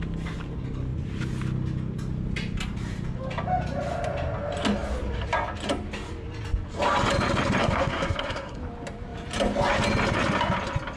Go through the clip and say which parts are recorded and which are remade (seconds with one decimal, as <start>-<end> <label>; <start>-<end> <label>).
0.0-7.6 recorded; 7.6-8.6 remade; 8.6-11.0 recorded

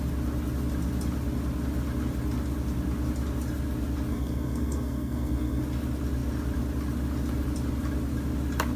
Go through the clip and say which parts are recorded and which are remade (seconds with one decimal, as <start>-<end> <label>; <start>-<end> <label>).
0.0-4.1 recorded; 4.1-5.6 remade; 5.6-8.8 recorded

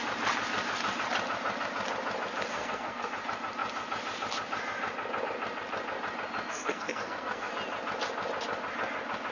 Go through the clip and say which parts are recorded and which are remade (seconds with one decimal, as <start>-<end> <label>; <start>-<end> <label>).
0.0-2.5 recorded; 2.5-3.1 remade; 3.1-6.5 recorded; 6.5-7.5 remade; 7.5-9.3 recorded

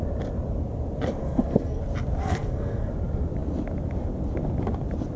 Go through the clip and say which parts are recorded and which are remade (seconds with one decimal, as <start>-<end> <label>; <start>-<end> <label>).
0.0-1.2 recorded; 1.2-1.8 remade; 1.8-2.2 recorded; 2.2-2.9 remade; 2.9-5.2 recorded

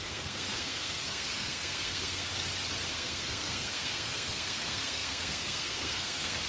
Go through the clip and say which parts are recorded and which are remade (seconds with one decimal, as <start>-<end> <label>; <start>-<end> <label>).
0.0-2.3 remade; 2.3-2.9 recorded; 2.9-6.5 remade

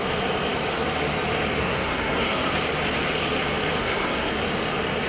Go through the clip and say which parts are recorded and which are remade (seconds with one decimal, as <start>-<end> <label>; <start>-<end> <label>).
0.0-1.6 recorded; 1.6-2.5 remade; 2.5-3.8 recorded; 3.8-4.3 remade; 4.3-5.1 recorded